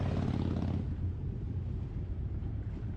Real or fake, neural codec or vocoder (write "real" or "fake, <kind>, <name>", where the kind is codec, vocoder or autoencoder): real